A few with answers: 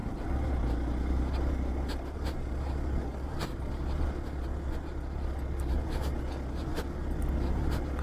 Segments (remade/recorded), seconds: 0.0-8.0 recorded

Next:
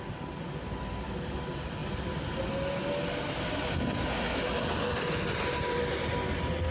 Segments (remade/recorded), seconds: 0.0-6.7 recorded

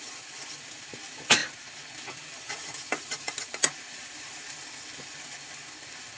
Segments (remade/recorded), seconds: 0.0-6.2 recorded

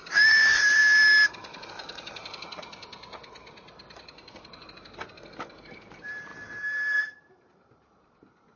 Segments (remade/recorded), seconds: 0.0-0.8 remade; 0.8-1.7 recorded; 1.7-6.3 remade; 6.3-7.0 recorded; 7.0-8.6 remade

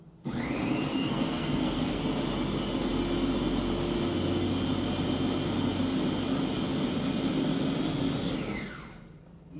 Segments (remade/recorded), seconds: 0.0-0.9 recorded; 0.9-2.0 remade; 2.0-9.6 recorded

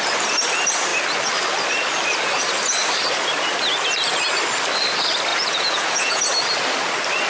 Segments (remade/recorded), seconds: 0.0-5.3 recorded; 5.3-6.2 remade; 6.2-7.3 recorded

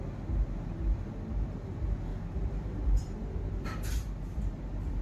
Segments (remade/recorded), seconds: 0.0-2.1 recorded; 2.1-5.0 remade

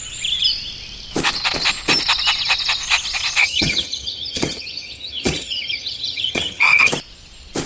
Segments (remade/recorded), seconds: 0.0-3.4 recorded; 3.4-6.9 remade; 6.9-7.7 recorded